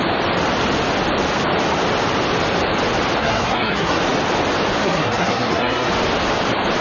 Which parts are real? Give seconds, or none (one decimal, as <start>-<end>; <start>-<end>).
0.0-3.2; 4.0-4.8; 5.9-6.8

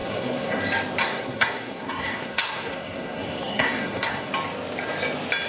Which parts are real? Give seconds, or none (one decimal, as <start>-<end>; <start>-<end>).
0.6-1.0; 4.3-5.5

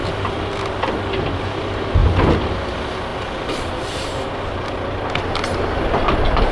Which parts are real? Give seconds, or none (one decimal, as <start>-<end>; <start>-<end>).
1.4-6.5

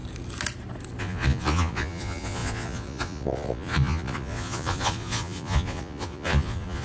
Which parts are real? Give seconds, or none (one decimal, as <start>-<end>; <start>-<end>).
0.0-1.0

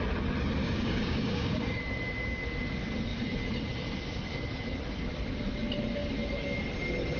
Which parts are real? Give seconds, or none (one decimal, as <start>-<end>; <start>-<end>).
0.0-0.6; 1.8-7.2

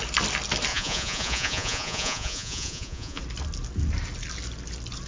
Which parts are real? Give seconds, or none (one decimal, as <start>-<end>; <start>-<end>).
0.0-0.7; 3.2-5.1

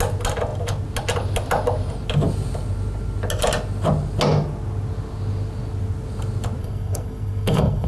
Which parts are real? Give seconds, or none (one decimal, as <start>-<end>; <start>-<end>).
0.0-6.6

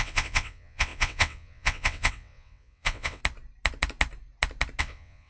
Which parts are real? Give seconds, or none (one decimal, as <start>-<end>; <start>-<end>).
3.2-4.8